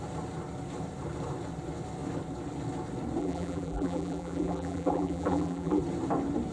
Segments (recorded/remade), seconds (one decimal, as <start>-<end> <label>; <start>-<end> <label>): 0.0-3.2 recorded; 3.2-5.8 remade; 5.8-6.5 recorded